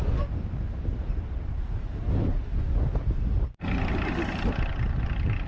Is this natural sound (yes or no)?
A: yes